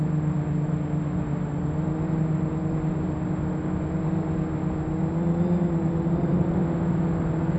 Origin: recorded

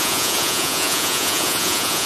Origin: remade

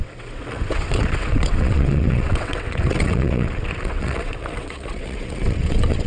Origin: remade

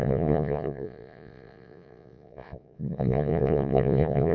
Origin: remade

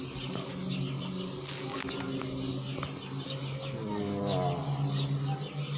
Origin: recorded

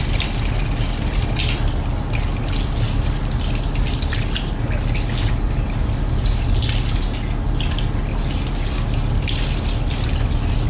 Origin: recorded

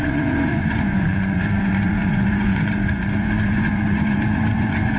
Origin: remade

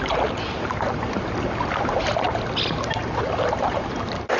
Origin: recorded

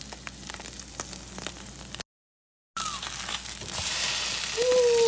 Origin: recorded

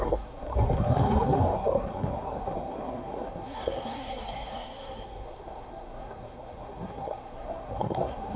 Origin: remade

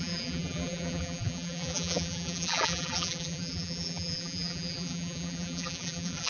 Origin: remade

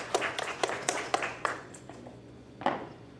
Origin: remade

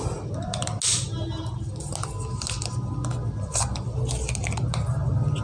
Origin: recorded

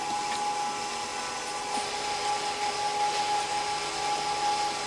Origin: recorded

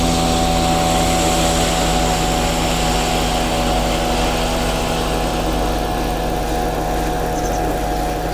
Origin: recorded